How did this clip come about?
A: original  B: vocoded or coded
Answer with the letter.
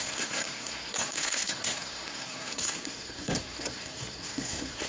B